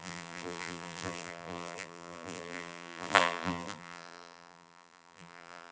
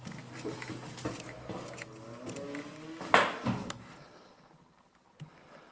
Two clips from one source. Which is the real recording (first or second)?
second